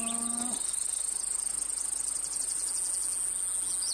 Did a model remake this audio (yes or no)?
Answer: no